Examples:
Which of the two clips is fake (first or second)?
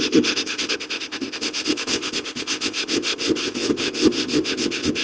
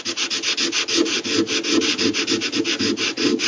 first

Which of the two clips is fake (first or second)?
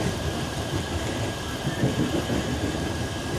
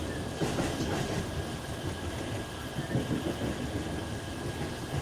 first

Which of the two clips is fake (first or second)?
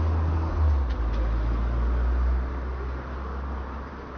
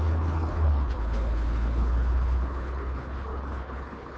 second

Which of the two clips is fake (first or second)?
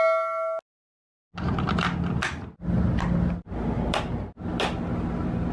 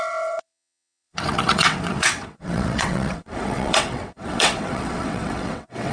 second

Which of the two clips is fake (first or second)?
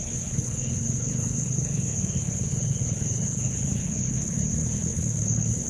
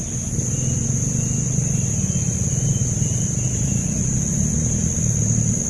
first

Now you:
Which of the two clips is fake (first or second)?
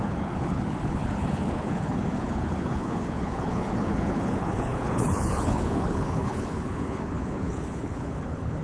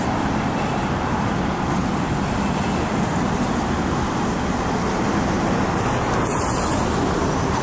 first